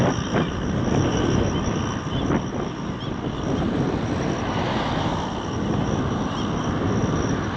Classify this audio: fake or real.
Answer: real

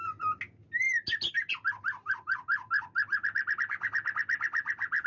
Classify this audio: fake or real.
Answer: real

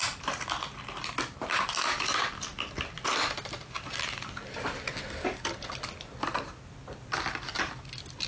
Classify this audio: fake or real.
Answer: real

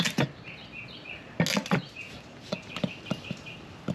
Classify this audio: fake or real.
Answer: real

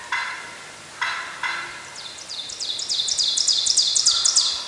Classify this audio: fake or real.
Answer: fake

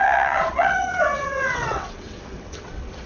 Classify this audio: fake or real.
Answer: fake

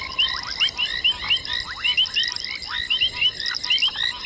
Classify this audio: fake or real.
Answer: real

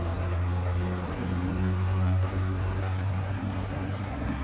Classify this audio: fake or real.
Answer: fake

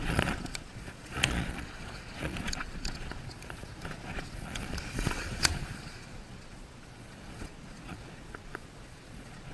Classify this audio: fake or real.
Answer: fake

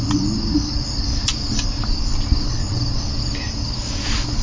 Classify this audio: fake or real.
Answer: real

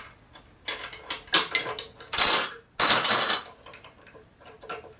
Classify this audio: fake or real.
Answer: real